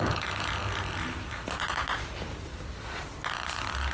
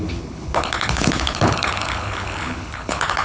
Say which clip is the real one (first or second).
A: first